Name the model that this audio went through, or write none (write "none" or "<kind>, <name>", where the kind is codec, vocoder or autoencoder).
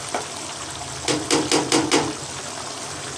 none